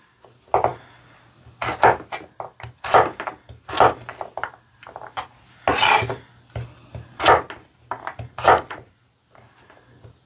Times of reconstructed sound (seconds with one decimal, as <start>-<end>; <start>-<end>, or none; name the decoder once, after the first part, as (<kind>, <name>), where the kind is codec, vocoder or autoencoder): none